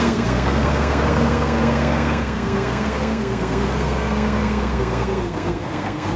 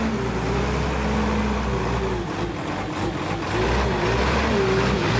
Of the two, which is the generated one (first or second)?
first